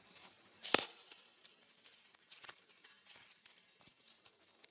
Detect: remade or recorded remade